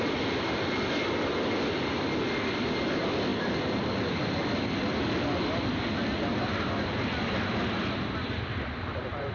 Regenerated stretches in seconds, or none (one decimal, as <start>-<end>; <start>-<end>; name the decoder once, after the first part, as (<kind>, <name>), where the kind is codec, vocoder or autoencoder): none